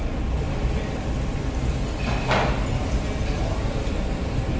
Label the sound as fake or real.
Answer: real